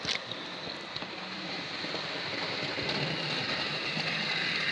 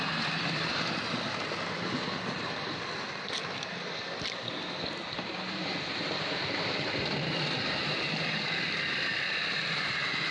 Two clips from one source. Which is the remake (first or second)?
second